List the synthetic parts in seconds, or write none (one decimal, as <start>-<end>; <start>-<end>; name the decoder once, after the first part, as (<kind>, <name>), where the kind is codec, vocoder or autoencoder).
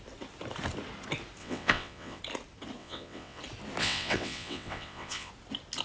1.4-2.2 (vocoder, WaveNeXt); 2.8-3.4; 3.8-5.3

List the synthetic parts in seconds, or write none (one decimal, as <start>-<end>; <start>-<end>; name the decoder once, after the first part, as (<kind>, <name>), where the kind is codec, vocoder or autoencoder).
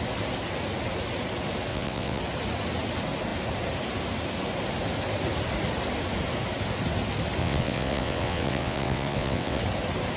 1.7-2.2 (vocoder, WaveNeXt); 7.4-9.6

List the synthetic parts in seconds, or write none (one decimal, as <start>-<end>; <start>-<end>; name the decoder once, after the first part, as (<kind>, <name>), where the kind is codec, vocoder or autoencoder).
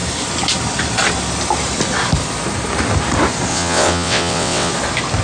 3.5-4.7 (vocoder, WaveNeXt)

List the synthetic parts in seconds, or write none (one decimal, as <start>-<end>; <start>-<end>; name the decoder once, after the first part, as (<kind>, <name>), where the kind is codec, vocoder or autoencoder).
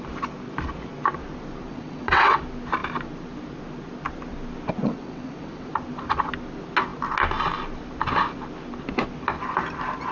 1.7-2.4 (vocoder, WaveNeXt); 4.8-5.7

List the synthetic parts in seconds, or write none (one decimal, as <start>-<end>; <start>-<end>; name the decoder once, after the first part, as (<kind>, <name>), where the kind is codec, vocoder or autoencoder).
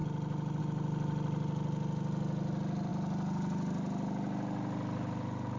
none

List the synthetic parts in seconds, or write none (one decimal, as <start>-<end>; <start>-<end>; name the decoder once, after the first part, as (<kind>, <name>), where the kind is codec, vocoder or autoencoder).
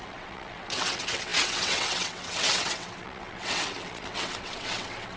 0.0-5.2 (vocoder, WaveNeXt)